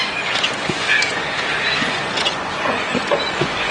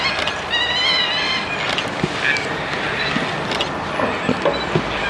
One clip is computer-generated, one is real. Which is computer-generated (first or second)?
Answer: first